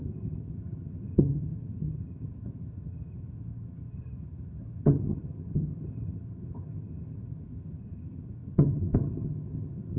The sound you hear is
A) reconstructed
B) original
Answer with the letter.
A